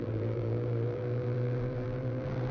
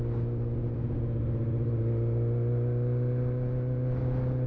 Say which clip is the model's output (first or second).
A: first